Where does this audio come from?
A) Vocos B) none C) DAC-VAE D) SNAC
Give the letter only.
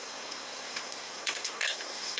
D